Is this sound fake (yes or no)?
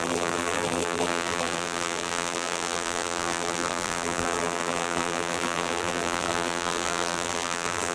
yes